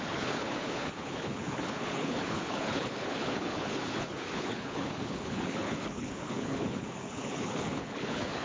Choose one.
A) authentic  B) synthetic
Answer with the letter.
B